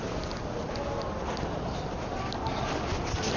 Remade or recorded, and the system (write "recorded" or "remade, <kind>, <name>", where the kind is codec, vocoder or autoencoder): recorded